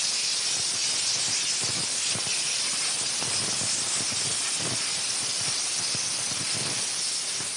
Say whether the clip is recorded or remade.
recorded